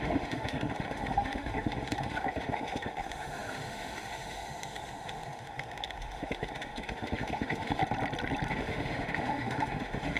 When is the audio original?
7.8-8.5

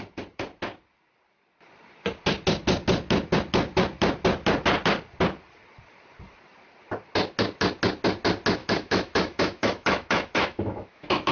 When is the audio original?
0.0-8.6

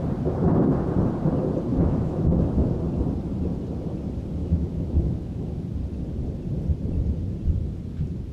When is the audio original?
0.0-1.7; 2.6-4.4; 5.6-8.3

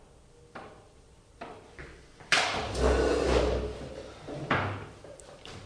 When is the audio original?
0.0-5.7

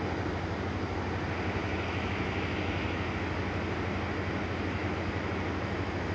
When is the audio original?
0.0-1.6; 3.1-4.8

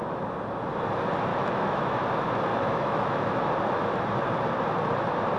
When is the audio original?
0.0-1.3; 1.9-2.5; 3.5-5.4